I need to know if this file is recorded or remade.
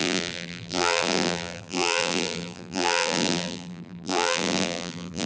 remade